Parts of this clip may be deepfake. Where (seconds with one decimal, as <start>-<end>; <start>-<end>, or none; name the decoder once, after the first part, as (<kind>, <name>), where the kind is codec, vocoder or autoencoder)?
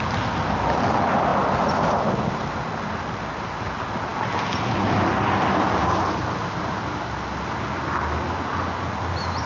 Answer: none